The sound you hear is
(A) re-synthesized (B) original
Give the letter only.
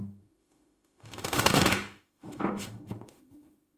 A